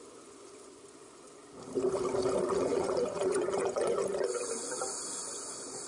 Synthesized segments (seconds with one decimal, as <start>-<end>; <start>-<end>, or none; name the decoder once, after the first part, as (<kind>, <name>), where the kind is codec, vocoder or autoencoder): 0.0-1.4 (vocoder, Vocos); 2.4-4.0; 5.3-5.9